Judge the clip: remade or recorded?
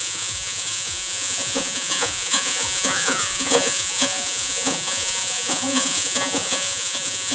remade